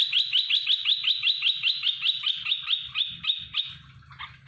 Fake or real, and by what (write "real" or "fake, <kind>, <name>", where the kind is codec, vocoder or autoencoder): real